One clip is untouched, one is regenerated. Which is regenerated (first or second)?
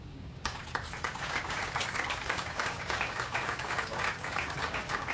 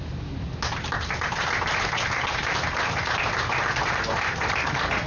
first